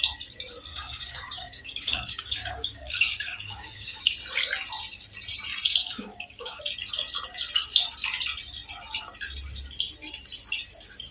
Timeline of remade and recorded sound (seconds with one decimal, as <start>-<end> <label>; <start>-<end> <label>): 0.0-0.7 recorded; 0.7-4.0 remade; 4.0-5.8 recorded; 5.8-6.6 remade; 6.6-11.1 recorded